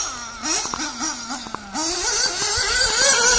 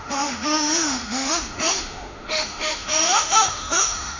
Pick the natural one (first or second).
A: first